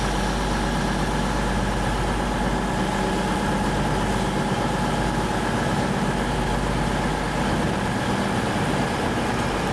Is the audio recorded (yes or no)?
yes